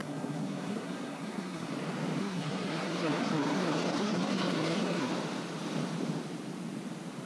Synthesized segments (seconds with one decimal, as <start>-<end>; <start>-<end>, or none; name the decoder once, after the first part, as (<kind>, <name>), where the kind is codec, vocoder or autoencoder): 0.0-1.7 (codec, SNAC); 2.2-5.1